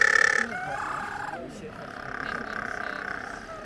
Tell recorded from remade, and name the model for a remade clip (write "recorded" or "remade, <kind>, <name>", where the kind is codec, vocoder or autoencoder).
recorded